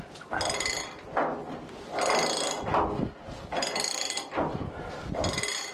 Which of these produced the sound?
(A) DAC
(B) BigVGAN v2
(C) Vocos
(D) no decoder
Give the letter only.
D